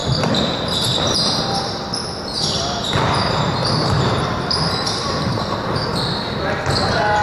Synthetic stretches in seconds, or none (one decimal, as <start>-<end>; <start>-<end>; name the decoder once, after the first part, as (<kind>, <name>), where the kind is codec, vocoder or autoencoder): 2.0-5.9 (vocoder, BigVGAN v2)